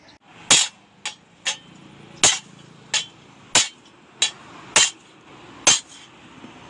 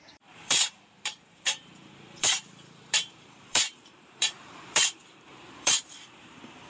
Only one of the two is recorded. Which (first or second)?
first